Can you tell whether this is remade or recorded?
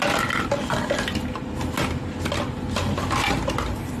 recorded